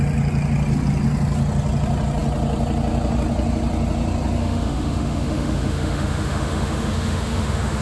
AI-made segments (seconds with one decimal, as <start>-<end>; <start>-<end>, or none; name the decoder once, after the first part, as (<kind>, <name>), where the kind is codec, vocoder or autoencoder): 4.4-7.8 (autoencoder, DAC-VAE)